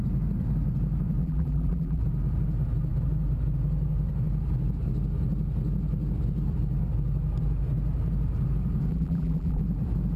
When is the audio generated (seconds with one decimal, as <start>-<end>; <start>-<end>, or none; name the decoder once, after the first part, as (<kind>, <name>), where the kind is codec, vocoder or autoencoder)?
1.2-2.0 (vocoder, BigVGAN v2); 8.9-9.6